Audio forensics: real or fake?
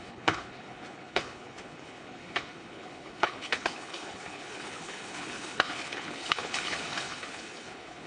fake